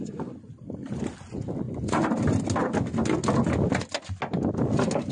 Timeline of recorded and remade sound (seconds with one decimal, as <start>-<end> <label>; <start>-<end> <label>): 0.0-5.1 recorded